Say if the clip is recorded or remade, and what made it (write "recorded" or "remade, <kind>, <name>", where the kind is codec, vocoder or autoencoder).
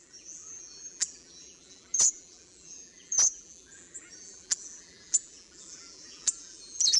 remade, vocoder, BigVGAN v2